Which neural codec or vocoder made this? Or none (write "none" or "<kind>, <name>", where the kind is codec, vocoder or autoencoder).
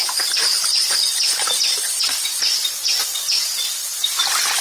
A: none